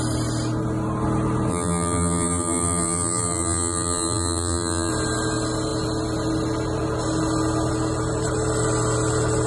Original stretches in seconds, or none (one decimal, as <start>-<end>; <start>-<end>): 0.0-1.5; 4.9-9.5